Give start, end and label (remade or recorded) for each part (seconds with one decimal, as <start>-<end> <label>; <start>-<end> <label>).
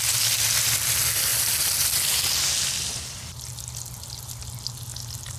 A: 0.0-5.4 recorded